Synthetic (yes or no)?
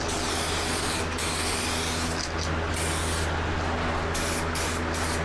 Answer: no